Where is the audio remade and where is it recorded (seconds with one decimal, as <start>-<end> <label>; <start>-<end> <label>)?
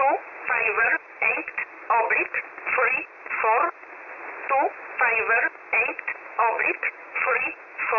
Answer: 0.0-1.5 remade; 1.5-6.1 recorded; 6.1-8.0 remade